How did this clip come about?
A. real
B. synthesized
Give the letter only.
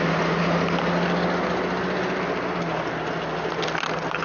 A